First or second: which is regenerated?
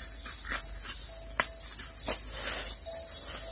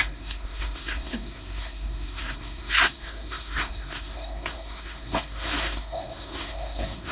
second